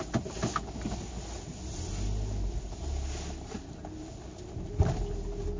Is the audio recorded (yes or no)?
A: yes